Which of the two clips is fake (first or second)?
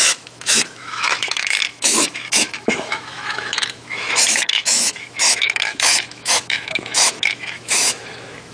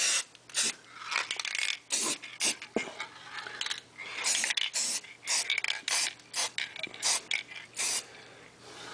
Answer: first